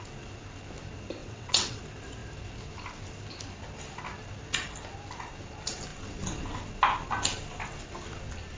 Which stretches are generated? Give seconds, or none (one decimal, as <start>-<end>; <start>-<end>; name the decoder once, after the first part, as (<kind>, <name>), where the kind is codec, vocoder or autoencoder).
1.2-1.8 (vocoder, WaveNeXt)